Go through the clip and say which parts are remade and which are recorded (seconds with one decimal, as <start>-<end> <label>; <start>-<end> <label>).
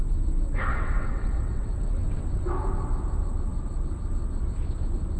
0.0-0.7 recorded; 0.7-2.5 remade; 2.5-5.2 recorded